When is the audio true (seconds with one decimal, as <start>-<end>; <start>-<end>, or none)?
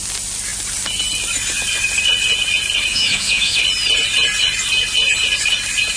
0.0-2.9; 3.6-6.0